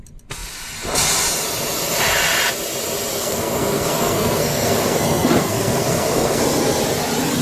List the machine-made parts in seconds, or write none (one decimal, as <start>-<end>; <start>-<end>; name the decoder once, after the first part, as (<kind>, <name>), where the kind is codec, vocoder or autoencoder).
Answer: 3.1-6.4 (codec, SNAC)